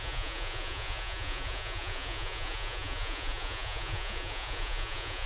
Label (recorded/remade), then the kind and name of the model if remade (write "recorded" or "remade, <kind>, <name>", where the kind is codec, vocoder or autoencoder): remade, vocoder, Vocos